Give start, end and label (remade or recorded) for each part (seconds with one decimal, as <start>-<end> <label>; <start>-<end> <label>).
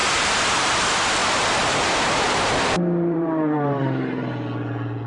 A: 0.0-0.7 remade; 0.7-1.2 recorded; 1.2-4.3 remade; 4.3-5.1 recorded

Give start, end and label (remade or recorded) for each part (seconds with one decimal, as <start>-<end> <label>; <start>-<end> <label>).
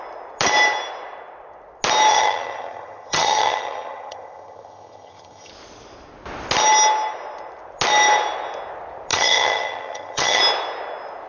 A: 0.0-2.1 recorded; 2.1-5.5 remade; 5.5-9.1 recorded; 9.1-10.4 remade; 10.4-11.3 recorded